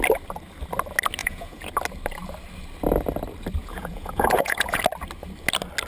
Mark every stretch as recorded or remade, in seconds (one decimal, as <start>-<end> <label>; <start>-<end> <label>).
0.0-1.2 recorded; 1.2-1.7 remade; 1.7-3.6 recorded; 3.6-4.8 remade; 4.8-5.9 recorded